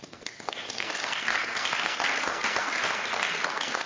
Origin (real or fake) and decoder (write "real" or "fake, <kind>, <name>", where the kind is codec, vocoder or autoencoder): fake, codec, SNAC